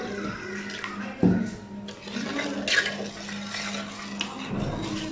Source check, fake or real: real